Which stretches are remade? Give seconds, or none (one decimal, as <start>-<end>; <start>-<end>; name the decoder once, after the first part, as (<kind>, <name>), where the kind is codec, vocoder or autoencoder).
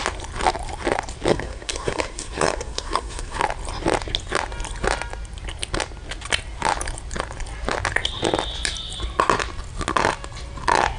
1.3-3.4 (codec, SNAC)